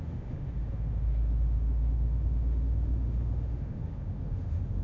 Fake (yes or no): yes